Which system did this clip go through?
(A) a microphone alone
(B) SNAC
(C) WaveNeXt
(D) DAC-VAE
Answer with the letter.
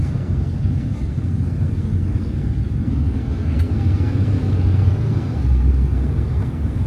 B